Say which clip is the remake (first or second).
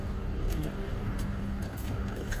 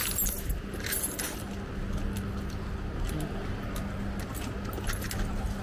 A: first